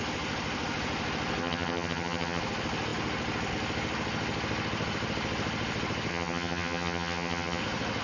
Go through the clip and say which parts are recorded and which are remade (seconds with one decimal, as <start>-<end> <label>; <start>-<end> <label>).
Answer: 0.0-1.4 recorded; 1.4-2.4 remade; 2.4-6.1 recorded; 6.1-7.6 remade; 7.6-8.0 recorded